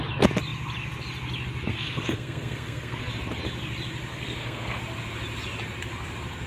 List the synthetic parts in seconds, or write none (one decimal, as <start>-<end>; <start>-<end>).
1.7-3.1; 4.1-4.8